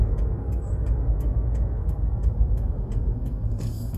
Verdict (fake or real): fake